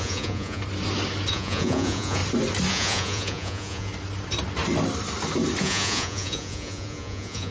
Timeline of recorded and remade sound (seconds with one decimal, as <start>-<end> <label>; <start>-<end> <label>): 0.0-0.6 remade; 0.6-1.3 recorded; 1.3-2.2 remade; 2.2-2.7 recorded; 2.7-3.9 remade; 3.9-5.6 recorded; 5.6-7.5 remade

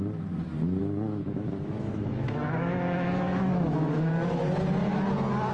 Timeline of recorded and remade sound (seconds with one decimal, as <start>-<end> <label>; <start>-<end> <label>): 0.0-0.8 recorded; 0.8-4.1 remade; 4.1-5.5 recorded

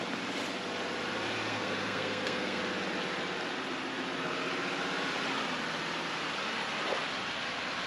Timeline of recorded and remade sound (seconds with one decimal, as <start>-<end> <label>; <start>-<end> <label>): 0.0-1.5 recorded; 1.5-2.6 remade; 2.6-7.9 recorded

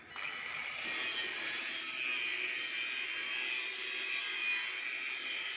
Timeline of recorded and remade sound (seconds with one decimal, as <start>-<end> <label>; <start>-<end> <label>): 0.0-5.6 recorded

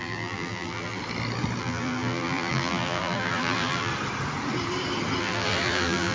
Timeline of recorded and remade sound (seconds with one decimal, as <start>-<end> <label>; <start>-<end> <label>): 0.0-1.0 remade; 1.0-1.6 recorded; 1.6-3.9 remade; 3.9-5.2 recorded; 5.2-6.1 remade

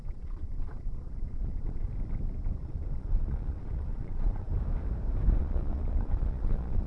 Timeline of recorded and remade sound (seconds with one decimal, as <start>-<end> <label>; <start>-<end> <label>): 0.0-1.9 remade; 1.9-2.6 recorded; 2.6-4.5 remade; 4.5-5.4 recorded; 5.4-6.9 remade